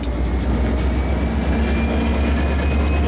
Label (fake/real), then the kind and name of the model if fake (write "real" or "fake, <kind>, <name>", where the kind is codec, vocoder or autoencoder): real